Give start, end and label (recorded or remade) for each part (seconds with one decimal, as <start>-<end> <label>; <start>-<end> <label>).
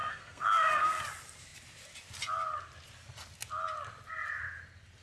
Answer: 0.0-1.0 remade; 1.0-5.0 recorded